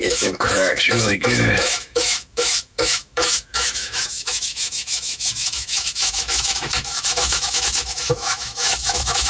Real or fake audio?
fake